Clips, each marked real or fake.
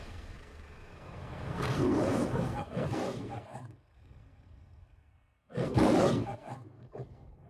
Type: fake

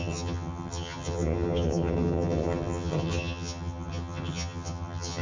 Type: fake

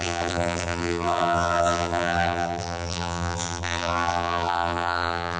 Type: fake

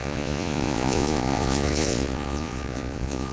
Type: fake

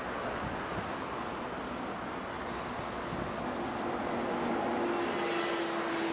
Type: real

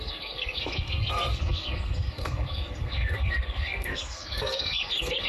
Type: fake